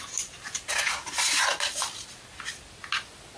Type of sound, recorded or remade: recorded